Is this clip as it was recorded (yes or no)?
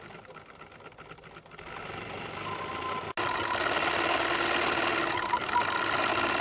yes